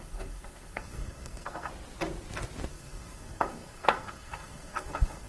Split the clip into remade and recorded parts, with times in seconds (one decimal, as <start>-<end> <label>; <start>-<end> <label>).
0.0-1.7 remade; 1.7-2.7 recorded; 2.7-5.3 remade